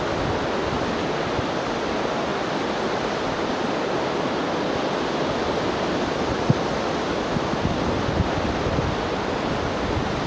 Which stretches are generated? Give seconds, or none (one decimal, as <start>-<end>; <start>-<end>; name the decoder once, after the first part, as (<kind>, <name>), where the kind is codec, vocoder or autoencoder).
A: none